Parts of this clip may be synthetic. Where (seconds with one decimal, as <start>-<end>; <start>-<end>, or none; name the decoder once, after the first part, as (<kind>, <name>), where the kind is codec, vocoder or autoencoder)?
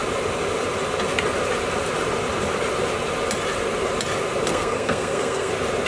4.5-5.5 (codec, SNAC)